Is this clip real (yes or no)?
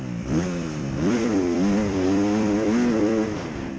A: no